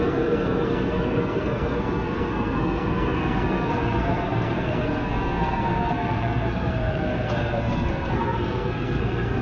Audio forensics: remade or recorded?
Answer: remade